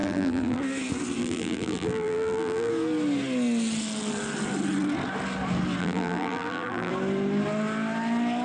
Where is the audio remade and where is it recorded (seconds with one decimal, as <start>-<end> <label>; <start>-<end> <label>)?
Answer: 0.0-0.6 remade; 0.6-1.2 recorded; 1.2-2.7 remade; 2.7-5.8 recorded; 5.8-6.9 remade; 6.9-8.4 recorded